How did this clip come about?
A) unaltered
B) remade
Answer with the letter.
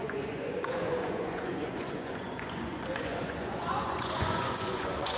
B